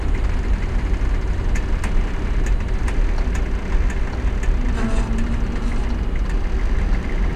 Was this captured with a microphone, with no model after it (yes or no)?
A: yes